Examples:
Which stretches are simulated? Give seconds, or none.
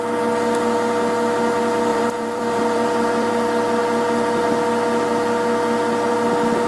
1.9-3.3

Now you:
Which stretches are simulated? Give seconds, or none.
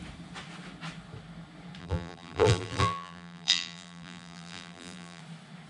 1.8-5.2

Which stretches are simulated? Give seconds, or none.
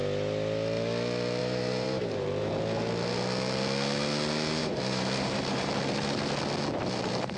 1.4-2.5; 4.6-5.7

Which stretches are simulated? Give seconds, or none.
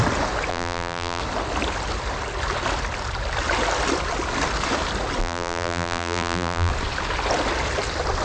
0.5-1.2; 5.2-6.7